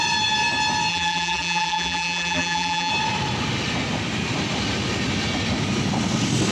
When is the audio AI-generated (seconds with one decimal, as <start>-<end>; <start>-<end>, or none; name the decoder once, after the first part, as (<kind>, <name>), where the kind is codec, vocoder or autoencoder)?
0.9-2.9 (vocoder, BigVGAN v2)